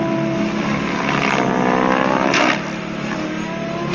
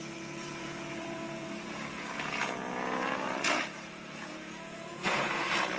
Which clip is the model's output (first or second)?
second